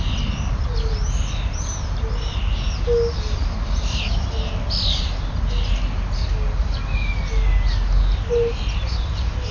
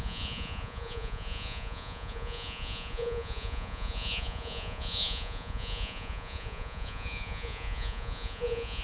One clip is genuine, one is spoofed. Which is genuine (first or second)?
first